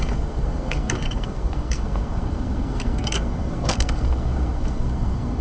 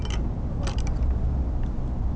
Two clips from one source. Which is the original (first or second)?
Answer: second